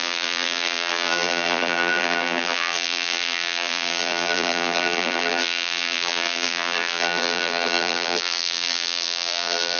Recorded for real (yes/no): no